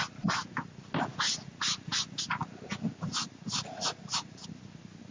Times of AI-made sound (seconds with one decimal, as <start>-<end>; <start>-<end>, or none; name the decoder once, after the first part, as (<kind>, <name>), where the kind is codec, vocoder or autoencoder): none